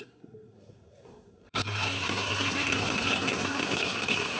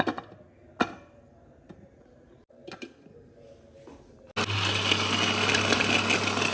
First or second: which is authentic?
second